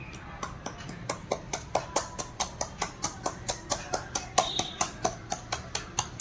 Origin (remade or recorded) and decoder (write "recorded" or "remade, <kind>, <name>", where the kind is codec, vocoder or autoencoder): recorded